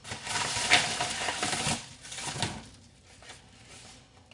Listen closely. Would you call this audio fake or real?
real